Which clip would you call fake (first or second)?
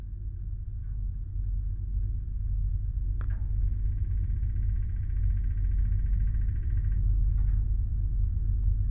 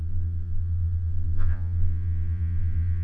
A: second